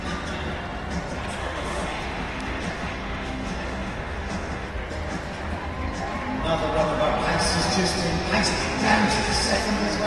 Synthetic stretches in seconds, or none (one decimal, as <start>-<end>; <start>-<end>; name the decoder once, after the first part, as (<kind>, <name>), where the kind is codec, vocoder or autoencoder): 1.4-4.7 (autoencoder, DAC-VAE); 8.6-9.6